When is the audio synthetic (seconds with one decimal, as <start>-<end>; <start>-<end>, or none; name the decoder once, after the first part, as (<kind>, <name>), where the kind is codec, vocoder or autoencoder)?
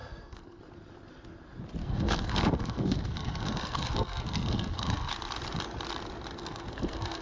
0.0-0.6 (codec, SNAC); 1.8-5.1; 6.4-7.2